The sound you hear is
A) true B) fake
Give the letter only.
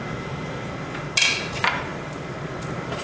A